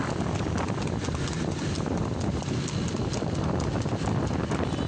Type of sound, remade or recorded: recorded